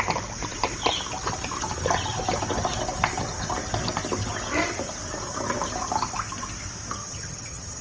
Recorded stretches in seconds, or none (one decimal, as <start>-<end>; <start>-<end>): 0.0-7.0